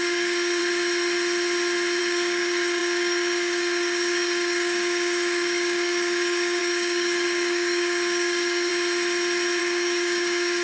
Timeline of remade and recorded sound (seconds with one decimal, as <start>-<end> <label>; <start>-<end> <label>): 0.0-0.6 remade; 0.6-2.0 recorded; 2.0-8.7 remade; 8.7-9.6 recorded; 9.6-10.6 remade